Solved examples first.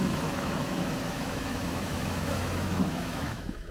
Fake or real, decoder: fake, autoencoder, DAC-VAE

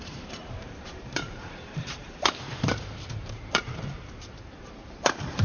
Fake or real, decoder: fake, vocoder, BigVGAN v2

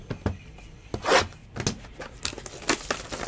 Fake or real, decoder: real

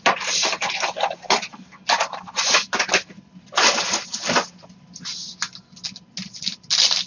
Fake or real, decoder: real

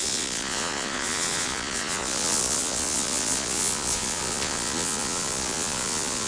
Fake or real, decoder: fake, vocoder, Vocos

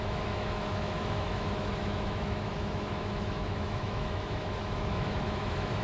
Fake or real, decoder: fake, autoencoder, DAC-VAE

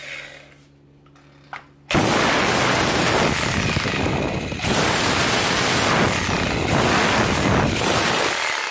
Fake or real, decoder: real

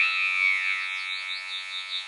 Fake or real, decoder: fake, vocoder, Vocos